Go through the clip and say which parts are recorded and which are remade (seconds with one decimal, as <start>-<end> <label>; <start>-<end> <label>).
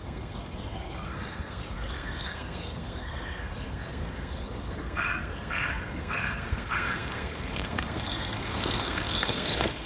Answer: 0.0-9.9 remade